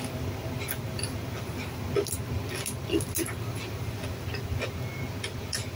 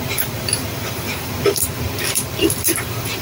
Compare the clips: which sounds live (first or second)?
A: first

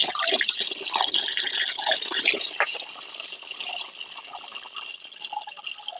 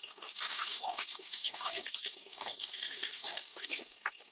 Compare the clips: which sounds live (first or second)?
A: first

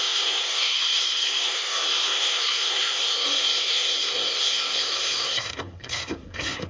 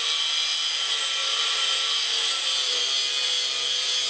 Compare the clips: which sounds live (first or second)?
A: second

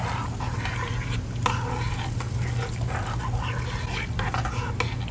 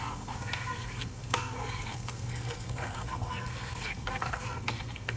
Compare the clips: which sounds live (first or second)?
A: first